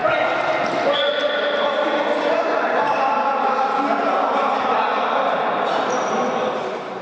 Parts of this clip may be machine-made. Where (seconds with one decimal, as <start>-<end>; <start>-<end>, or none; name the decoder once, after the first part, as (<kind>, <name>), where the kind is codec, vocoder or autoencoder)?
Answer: none